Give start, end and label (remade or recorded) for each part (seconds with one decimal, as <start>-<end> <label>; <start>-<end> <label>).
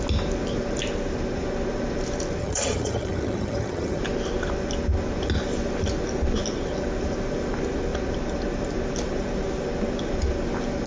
0.0-2.4 recorded; 2.4-4.0 remade; 4.0-10.9 recorded